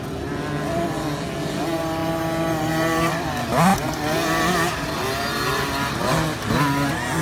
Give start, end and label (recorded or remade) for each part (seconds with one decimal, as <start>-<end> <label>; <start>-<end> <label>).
0.0-7.2 recorded